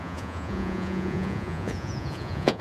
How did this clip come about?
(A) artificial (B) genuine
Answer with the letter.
A